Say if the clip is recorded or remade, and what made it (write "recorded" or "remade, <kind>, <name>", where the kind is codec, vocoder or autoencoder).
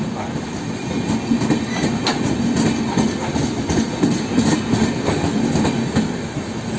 recorded